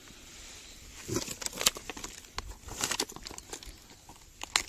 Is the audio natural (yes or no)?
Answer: yes